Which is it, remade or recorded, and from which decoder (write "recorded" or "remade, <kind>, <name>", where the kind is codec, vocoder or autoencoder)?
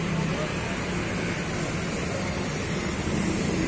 recorded